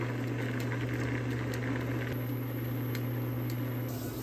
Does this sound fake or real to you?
real